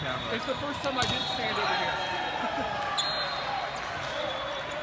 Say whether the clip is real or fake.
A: real